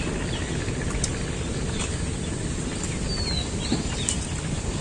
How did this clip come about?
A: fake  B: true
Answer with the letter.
B